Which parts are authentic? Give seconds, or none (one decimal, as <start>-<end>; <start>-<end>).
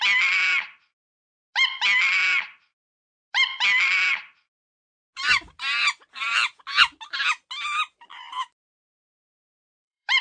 0.0-8.1